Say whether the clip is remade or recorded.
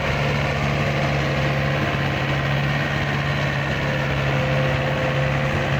recorded